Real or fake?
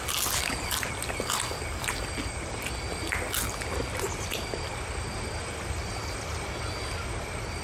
real